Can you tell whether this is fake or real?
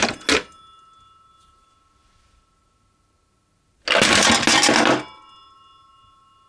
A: real